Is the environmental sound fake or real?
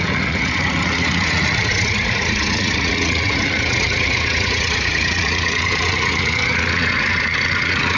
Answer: fake